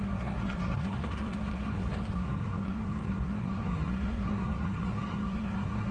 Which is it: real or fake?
fake